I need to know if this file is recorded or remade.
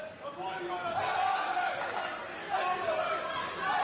recorded